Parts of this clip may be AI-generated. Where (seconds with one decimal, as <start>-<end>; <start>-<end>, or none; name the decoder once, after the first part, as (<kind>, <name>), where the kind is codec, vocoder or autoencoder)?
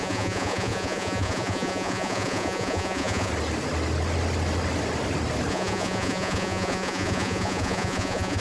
0.0-3.3 (vocoder, Vocos); 5.5-8.4